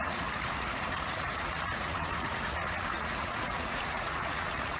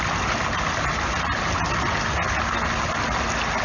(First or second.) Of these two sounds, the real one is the second